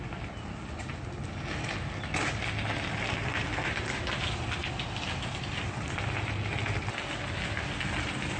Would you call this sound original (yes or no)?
yes